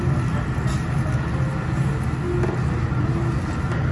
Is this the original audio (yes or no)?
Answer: yes